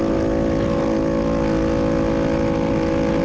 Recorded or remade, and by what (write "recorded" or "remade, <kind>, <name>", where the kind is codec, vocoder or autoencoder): recorded